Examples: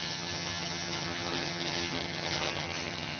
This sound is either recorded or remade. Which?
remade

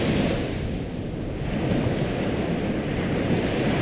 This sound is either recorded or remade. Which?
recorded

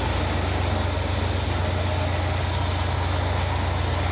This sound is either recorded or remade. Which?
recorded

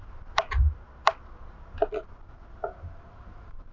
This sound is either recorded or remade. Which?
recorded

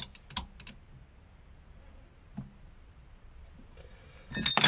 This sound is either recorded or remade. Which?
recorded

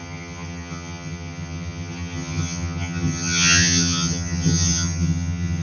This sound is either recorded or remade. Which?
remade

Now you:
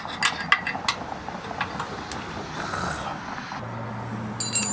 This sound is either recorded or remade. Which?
recorded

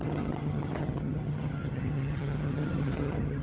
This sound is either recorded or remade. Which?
remade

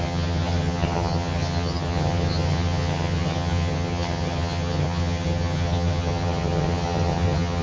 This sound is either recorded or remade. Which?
remade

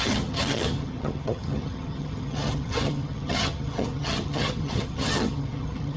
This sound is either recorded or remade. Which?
remade